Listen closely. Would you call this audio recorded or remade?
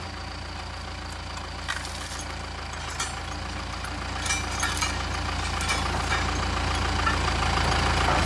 recorded